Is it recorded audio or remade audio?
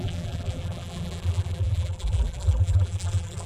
remade